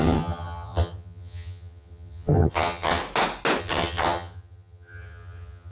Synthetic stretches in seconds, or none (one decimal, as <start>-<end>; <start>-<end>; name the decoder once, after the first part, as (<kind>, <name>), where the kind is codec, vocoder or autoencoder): 0.0-3.0 (vocoder, HiFi-GAN); 3.6-5.7